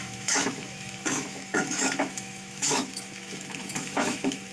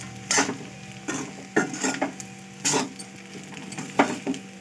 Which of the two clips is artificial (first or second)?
first